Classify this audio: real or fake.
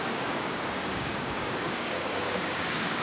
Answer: fake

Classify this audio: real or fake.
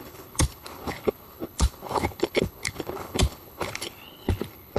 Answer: fake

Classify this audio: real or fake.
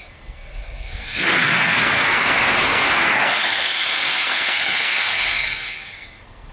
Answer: fake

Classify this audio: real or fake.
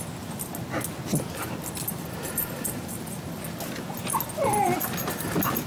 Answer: real